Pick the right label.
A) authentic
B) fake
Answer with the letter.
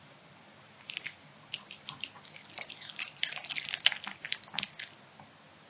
A